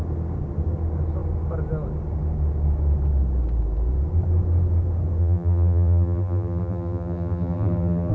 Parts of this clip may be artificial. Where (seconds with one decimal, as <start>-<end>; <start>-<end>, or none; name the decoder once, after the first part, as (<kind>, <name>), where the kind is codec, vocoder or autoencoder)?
5.2-8.1 (vocoder, BigVGAN v2)